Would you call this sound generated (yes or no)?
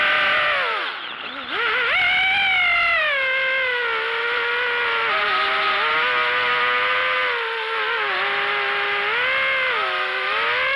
no